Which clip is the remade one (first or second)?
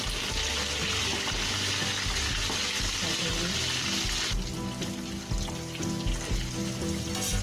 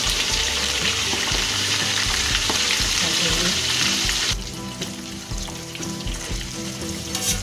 second